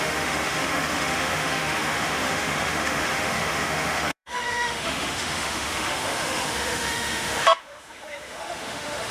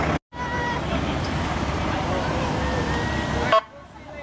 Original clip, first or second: second